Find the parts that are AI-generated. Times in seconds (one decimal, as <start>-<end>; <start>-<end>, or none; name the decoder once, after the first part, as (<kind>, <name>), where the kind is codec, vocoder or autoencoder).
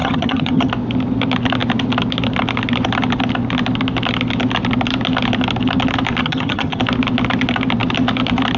0.0-0.7 (vocoder, HiFi-GAN); 6.2-6.8